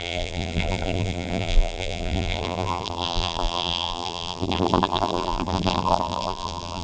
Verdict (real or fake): fake